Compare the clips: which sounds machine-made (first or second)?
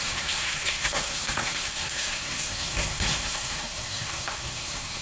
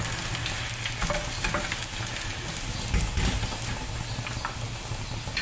first